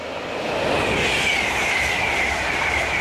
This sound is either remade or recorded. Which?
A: recorded